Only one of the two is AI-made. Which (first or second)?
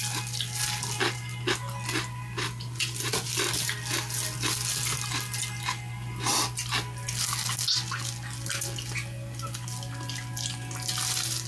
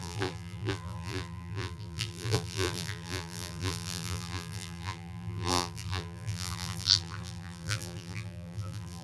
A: second